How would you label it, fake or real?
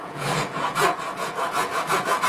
fake